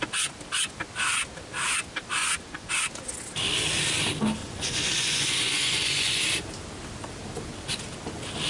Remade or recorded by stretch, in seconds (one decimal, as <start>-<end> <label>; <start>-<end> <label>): 0.0-2.2 recorded; 2.2-2.7 remade; 2.7-4.4 recorded; 4.4-6.2 remade; 6.2-8.5 recorded